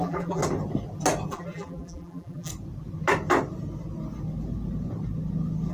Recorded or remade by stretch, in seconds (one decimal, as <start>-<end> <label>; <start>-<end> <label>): 0.0-0.4 remade; 0.4-1.3 recorded; 1.3-2.5 remade; 2.5-5.7 recorded